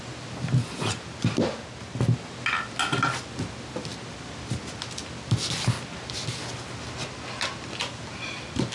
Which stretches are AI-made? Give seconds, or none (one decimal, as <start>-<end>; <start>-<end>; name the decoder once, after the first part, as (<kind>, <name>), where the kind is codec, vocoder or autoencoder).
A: none